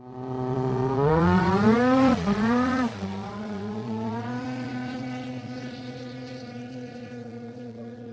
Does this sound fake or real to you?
fake